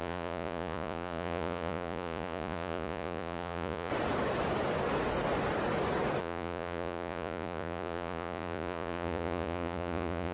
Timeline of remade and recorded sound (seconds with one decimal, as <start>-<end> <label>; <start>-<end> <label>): 0.0-3.9 remade; 3.9-6.2 recorded; 6.2-10.3 remade